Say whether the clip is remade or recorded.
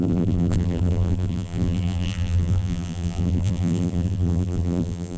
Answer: remade